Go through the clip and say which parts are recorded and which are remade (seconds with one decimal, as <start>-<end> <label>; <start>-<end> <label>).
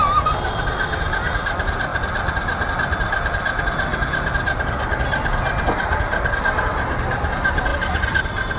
0.0-8.6 recorded